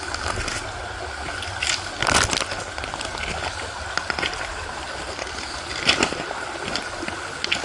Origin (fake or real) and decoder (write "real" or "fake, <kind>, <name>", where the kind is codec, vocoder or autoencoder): real